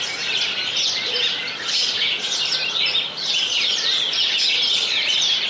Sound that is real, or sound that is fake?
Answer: real